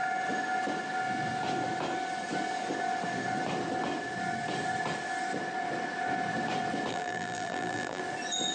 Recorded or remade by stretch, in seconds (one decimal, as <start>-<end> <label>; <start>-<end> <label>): 0.0-6.9 recorded; 6.9-8.0 remade; 8.0-8.5 recorded